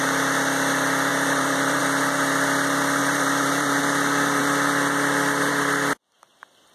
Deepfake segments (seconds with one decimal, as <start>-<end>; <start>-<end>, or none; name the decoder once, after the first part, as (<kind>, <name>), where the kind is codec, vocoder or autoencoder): 1.1-1.8 (vocoder, BigVGAN v2); 3.0-3.8